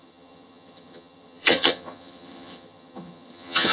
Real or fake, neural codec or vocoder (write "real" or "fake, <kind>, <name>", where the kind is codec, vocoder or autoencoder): fake, vocoder, HiFi-GAN